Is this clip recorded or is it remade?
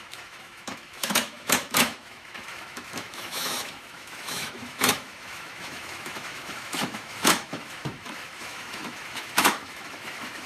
remade